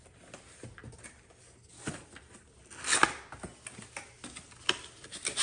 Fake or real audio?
real